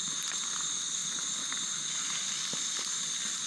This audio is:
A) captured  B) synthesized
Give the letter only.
A